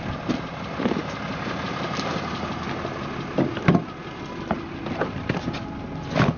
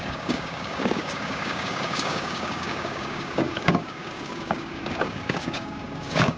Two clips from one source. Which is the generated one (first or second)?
second